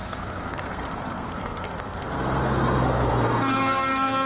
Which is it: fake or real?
fake